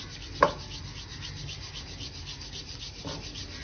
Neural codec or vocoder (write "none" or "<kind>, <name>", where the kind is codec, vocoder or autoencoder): none